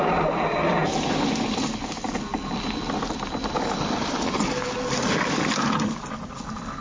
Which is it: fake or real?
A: real